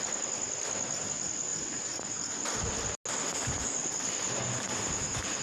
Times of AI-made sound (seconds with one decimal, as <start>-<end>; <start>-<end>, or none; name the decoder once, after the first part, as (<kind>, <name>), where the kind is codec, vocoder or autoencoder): none